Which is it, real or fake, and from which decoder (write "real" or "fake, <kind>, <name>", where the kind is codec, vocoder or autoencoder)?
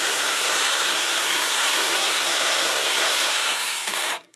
fake, codec, SNAC